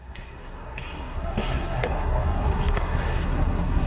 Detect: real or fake fake